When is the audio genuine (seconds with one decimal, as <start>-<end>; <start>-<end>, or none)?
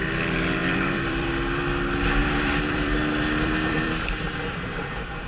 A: 0.0-0.6; 1.3-2.2; 4.1-5.3